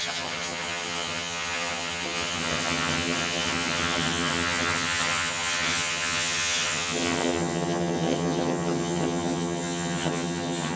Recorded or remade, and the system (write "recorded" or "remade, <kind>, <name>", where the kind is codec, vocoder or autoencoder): remade, vocoder, HiFi-GAN